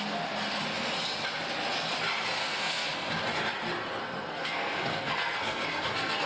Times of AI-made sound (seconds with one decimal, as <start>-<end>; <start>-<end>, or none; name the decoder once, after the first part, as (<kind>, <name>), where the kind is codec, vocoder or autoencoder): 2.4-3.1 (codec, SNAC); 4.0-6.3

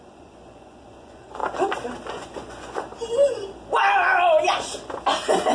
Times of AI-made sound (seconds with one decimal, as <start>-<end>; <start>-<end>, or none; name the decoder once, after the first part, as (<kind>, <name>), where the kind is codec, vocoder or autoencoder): 0.0-1.4 (vocoder, Vocos); 2.1-2.9

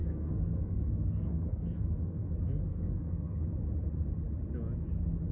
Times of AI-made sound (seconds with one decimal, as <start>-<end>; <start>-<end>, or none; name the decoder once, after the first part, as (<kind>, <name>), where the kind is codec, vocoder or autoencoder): 0.0-2.3 (codec, SNAC); 2.7-3.4